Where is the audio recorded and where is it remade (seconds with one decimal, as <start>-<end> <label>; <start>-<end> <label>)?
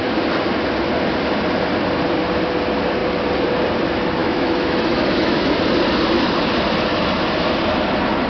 0.0-4.2 recorded; 4.2-5.5 remade; 5.5-8.3 recorded